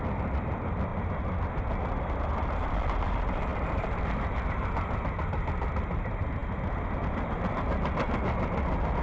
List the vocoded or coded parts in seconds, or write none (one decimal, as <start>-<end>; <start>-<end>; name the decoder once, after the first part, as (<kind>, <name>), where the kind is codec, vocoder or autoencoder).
3.5-4.0 (vocoder, BigVGAN v2)